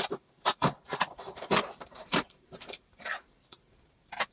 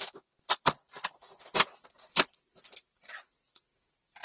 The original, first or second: second